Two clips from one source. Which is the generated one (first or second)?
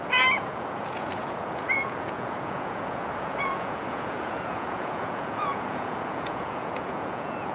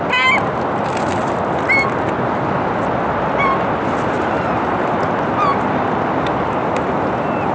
first